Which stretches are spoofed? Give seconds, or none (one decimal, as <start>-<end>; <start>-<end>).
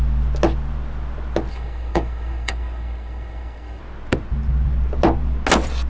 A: 1.5-3.8